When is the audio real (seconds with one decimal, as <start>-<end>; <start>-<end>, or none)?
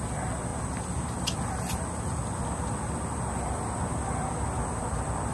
0.0-5.3